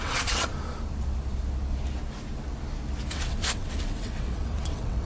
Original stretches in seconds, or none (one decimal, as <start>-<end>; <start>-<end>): 0.5-3.1